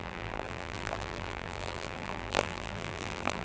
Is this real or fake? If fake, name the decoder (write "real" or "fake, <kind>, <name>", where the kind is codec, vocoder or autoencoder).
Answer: fake, vocoder, BigVGAN v2